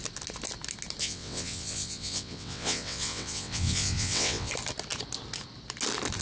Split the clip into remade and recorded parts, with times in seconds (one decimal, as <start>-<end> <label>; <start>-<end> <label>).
0.0-1.0 recorded; 1.0-4.5 remade; 4.5-6.2 recorded